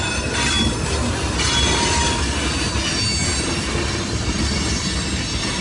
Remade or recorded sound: recorded